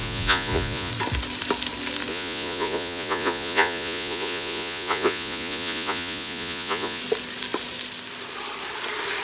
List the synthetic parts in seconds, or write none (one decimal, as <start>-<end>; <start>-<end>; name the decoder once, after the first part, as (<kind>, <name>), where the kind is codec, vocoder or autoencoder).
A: 0.0-0.9 (vocoder, Vocos); 2.1-7.0